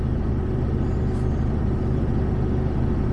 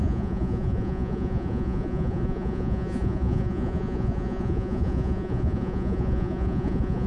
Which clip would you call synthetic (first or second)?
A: second